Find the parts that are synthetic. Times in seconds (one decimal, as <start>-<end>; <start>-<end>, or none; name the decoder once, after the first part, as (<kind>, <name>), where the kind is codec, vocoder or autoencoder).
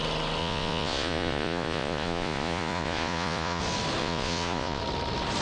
0.4-3.6 (vocoder, Vocos); 4.0-4.8